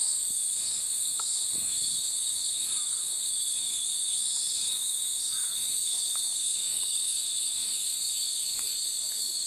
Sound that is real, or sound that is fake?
fake